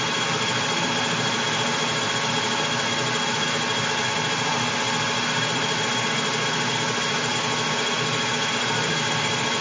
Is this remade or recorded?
recorded